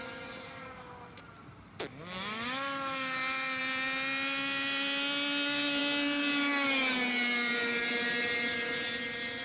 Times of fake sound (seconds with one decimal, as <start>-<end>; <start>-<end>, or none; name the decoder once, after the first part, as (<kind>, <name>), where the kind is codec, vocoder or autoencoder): none